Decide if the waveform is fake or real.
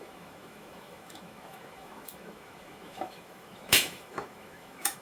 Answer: fake